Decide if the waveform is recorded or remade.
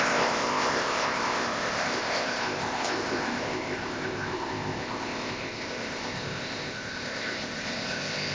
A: remade